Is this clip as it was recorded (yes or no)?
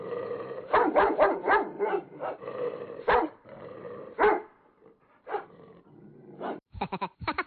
no